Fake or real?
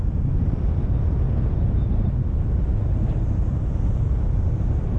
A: real